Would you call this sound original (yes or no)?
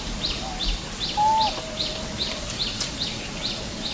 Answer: yes